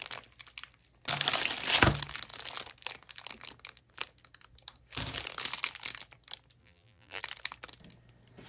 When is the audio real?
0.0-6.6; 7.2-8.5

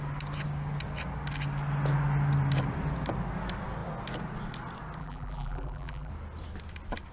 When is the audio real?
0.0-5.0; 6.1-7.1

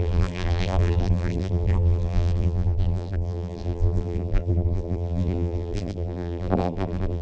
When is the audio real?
none

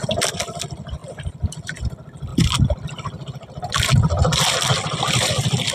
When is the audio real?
0.0-5.7